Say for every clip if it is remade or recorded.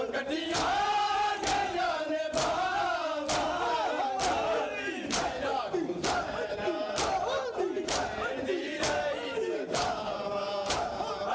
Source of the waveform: recorded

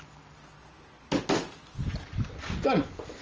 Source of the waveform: recorded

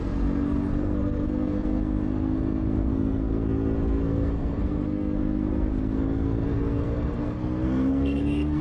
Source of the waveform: remade